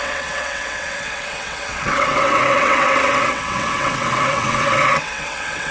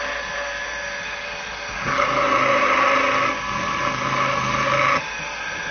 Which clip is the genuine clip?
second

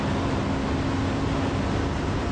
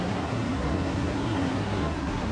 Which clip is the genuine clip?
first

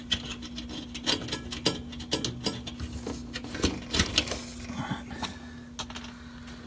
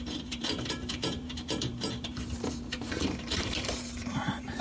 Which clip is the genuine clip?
first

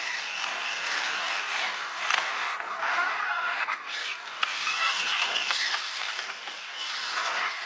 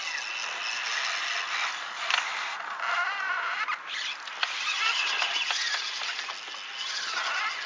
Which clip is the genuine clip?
second